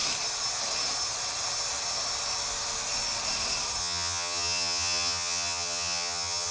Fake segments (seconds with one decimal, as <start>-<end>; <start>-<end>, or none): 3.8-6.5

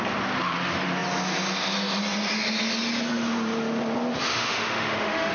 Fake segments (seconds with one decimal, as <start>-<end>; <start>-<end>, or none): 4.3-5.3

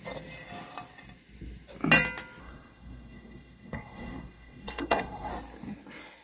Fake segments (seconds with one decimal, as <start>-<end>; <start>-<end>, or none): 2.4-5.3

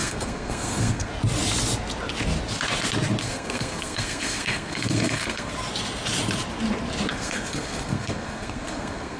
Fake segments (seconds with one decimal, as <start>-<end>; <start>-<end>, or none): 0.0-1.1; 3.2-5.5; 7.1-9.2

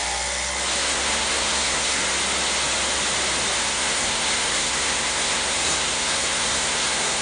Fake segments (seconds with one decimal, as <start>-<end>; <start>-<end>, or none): 0.8-2.0; 3.6-7.2

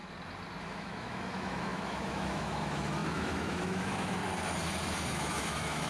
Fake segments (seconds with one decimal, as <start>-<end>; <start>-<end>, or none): 0.6-4.2; 5.1-5.9

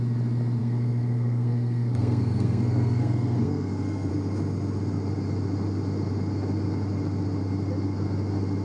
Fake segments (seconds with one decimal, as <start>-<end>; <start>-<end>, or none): 0.6-4.1

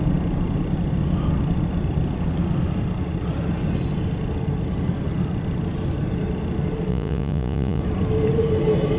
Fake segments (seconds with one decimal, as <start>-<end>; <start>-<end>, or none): 6.9-7.8